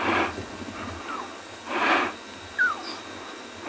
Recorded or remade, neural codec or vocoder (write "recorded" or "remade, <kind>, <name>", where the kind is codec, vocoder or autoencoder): recorded